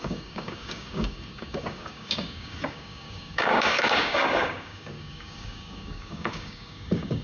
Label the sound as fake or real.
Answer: fake